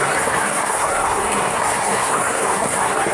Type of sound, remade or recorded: remade